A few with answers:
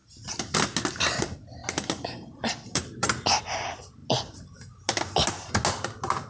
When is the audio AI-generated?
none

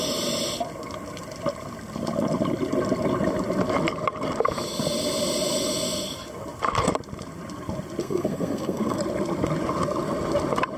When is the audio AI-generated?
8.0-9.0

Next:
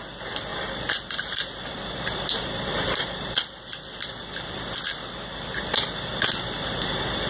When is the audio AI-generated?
0.5-4.8

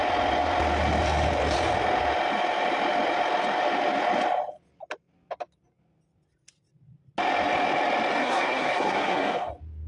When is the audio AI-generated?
8.2-9.5

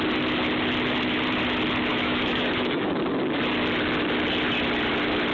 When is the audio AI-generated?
1.9-2.9

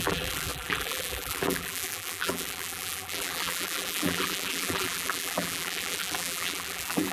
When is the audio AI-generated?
0.0-7.1